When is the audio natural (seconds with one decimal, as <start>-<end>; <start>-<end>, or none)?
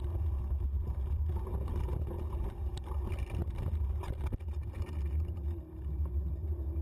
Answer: 0.0-6.8